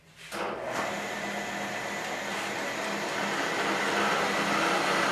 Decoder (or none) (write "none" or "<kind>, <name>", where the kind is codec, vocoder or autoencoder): none